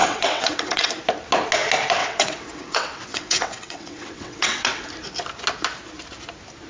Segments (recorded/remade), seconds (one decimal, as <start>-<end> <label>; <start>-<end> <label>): 0.0-0.9 remade; 0.9-2.0 recorded; 2.0-4.9 remade; 4.9-6.7 recorded